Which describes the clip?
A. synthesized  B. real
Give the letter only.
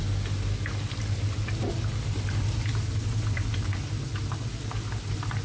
B